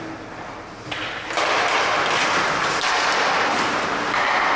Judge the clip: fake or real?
real